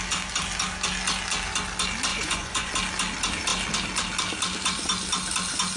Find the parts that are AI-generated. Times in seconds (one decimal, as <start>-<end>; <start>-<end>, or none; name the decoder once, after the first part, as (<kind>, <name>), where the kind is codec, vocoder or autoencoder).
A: 2.1-2.7 (vocoder, Vocos)